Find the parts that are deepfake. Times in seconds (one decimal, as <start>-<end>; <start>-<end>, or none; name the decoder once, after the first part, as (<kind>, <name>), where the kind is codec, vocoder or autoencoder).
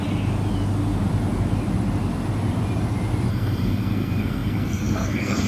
3.3-5.5 (codec, SNAC)